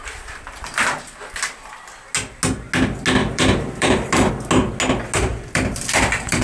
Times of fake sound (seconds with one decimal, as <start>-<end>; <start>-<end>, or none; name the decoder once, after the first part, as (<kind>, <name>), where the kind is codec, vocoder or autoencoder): 3.2-4.3 (vocoder, BigVGAN v2); 5.3-6.4